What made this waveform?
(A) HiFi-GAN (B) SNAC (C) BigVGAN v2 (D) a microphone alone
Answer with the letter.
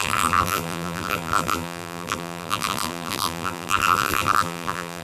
C